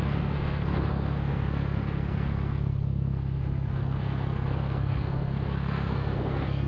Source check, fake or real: fake